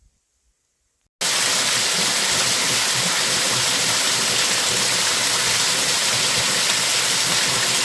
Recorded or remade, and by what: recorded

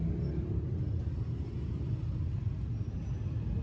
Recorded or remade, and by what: recorded